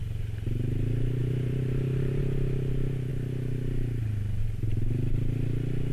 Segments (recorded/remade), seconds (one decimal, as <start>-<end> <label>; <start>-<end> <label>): 0.0-1.2 recorded; 1.2-2.2 remade; 2.2-5.9 recorded